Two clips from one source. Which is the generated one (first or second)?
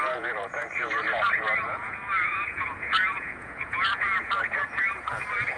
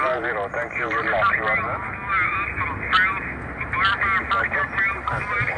first